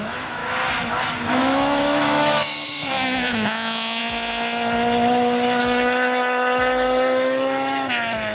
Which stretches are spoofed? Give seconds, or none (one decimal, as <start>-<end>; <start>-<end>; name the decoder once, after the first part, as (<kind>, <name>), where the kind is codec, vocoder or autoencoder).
0.0-0.4 (autoencoder, DAC-VAE); 1.3-4.0; 5.6-8.3